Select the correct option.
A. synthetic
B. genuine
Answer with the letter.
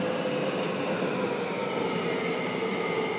B